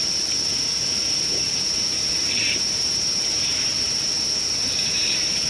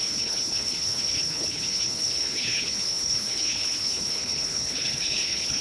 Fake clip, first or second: second